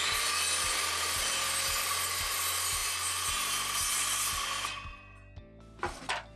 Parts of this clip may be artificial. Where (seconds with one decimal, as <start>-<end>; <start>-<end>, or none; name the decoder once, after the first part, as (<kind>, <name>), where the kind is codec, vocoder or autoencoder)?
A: none